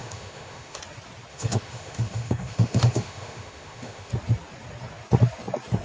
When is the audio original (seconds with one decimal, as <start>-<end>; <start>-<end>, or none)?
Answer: 0.8-1.3; 4.1-5.8

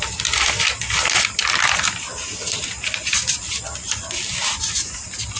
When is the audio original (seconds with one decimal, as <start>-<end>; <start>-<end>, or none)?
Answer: 0.0-5.4

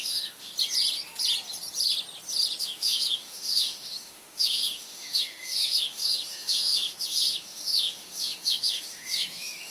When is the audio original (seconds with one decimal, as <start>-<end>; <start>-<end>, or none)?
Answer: 0.5-2.6

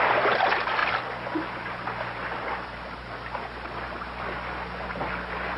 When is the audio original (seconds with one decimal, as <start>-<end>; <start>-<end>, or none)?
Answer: 0.0-5.6